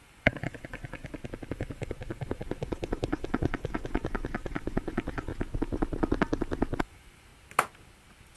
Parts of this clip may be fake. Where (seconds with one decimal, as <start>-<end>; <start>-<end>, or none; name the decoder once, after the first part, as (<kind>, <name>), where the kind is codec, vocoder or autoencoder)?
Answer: 0.0-1.0 (vocoder, Vocos); 1.5-5.3; 6.8-7.3